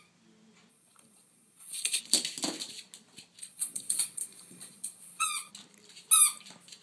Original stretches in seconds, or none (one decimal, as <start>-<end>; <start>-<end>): 0.0-0.7; 2.0-3.4; 5.5-6.8